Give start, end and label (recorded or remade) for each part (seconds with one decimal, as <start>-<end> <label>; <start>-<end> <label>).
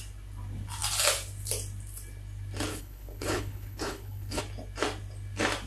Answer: 0.0-2.7 recorded; 2.7-4.4 remade; 4.4-5.7 recorded